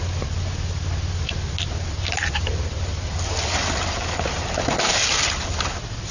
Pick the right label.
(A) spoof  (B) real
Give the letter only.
B